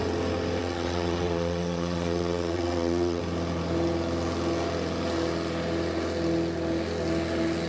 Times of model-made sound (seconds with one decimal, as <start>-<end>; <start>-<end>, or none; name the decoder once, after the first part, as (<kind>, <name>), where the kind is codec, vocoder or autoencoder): 0.6-3.2 (vocoder, Vocos)